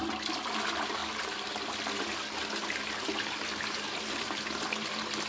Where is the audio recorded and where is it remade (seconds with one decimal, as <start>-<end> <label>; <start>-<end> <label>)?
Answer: 0.0-5.3 recorded